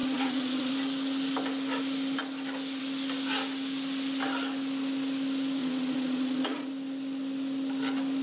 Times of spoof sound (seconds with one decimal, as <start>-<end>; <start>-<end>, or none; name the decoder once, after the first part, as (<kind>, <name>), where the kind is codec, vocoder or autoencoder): 0.0-0.7 (vocoder, Vocos); 5.6-6.7